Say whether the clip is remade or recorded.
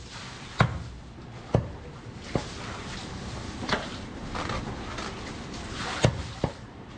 recorded